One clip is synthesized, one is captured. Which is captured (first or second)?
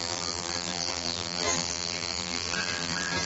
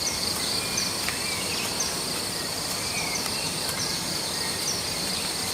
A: second